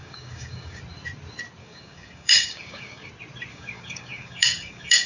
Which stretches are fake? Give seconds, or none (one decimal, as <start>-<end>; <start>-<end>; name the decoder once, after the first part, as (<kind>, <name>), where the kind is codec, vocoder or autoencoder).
0.0-0.8 (codec, DAC); 1.6-3.1; 3.5-5.1